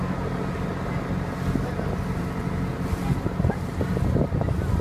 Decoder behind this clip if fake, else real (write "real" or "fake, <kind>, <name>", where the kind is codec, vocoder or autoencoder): real